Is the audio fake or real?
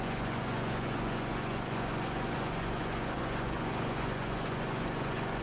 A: fake